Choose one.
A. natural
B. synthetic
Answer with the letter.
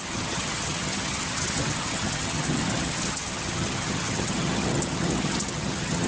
B